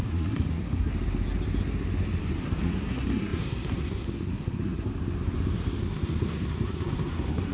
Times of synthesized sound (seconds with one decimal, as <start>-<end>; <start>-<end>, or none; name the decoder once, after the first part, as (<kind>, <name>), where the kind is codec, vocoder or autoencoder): 0.0-0.9 (codec, SNAC); 2.2-4.9; 5.8-7.5